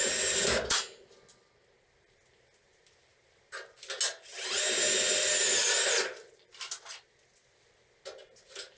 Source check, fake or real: real